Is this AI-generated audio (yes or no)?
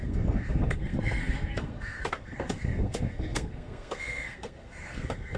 yes